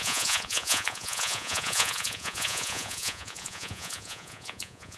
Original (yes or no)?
no